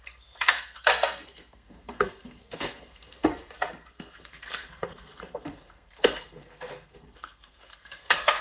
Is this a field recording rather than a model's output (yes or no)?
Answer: no